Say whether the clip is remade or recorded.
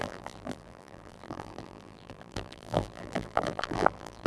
remade